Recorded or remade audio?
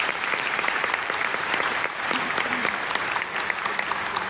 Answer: remade